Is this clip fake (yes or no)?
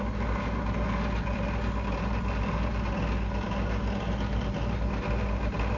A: no